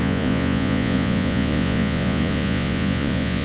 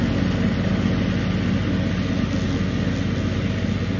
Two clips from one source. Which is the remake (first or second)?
first